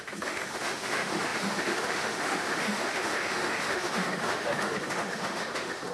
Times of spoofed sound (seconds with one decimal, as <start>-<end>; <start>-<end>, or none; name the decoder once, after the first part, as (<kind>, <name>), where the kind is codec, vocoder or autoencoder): 0.0-5.9 (autoencoder, DAC-VAE)